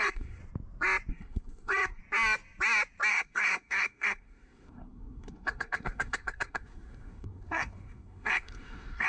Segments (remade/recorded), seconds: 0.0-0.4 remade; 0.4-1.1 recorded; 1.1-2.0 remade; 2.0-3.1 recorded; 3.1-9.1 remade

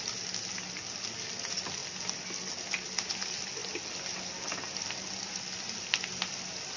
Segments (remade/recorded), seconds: 0.0-6.8 recorded

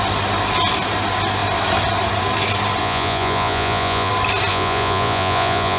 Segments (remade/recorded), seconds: 0.0-2.8 recorded; 2.8-4.1 remade; 4.1-4.5 recorded; 4.5-5.8 remade